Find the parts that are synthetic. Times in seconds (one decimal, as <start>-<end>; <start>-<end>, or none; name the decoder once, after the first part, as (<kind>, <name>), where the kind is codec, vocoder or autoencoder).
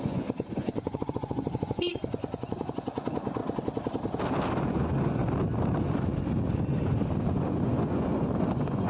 0.0-3.4 (vocoder, Vocos); 4.7-5.2; 7.3-8.9